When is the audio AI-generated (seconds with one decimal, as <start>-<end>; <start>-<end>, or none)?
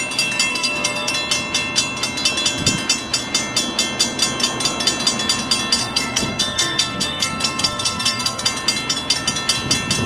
0.5-1.1; 5.8-8.4